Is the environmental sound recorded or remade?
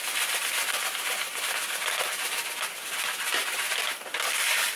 recorded